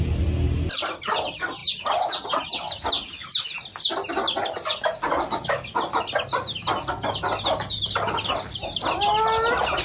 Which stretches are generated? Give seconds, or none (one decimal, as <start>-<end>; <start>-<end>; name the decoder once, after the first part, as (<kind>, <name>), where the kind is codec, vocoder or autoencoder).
none